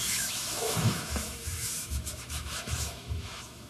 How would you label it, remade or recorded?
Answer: remade